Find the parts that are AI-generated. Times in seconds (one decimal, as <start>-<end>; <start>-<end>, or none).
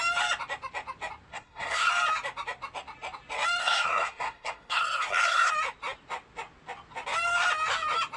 1.3-1.9; 3.6-5.5